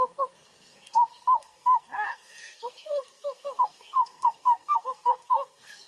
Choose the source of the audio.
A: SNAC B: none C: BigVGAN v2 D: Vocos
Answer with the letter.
A